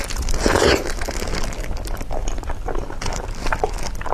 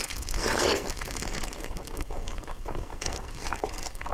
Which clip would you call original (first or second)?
first